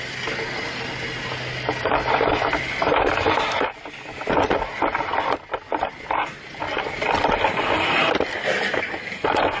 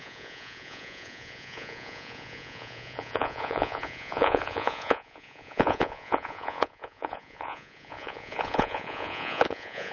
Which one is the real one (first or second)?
first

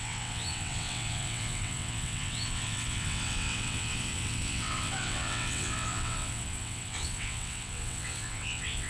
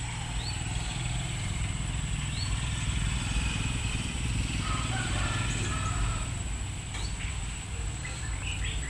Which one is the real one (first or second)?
second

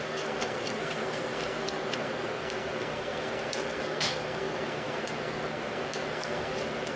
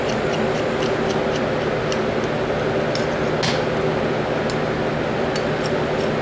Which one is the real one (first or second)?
second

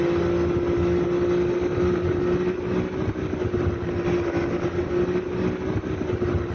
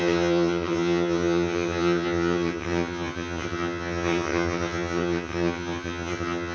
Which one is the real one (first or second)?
first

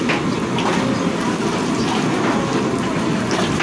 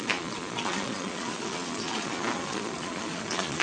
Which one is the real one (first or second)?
first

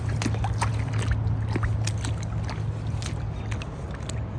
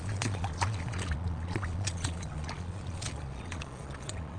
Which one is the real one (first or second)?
first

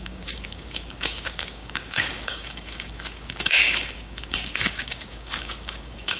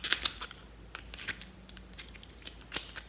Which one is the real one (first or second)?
second